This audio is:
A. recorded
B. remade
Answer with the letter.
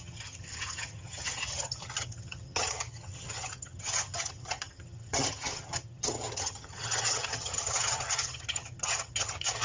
B